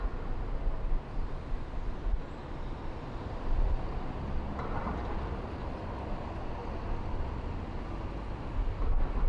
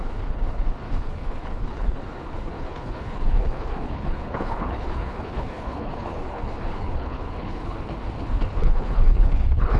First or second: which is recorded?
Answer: first